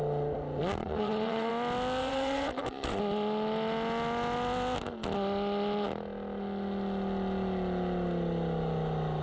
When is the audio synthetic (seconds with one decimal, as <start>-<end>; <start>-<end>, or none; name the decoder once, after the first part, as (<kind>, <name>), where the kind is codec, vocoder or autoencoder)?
0.8-1.5 (vocoder, WaveNeXt); 2.0-3.0